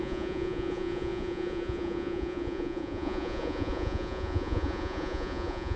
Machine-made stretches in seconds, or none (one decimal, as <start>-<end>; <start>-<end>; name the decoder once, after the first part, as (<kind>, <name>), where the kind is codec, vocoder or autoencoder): 0.0-5.8 (vocoder, Vocos)